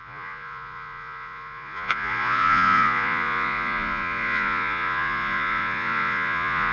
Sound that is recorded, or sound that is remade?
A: remade